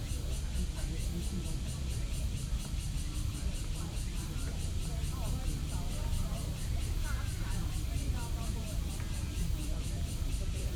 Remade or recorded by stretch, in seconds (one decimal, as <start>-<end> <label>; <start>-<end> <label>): 0.0-3.8 recorded; 3.8-10.8 remade